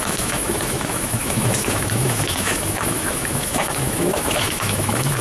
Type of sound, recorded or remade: remade